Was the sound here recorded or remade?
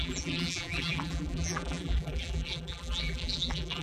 remade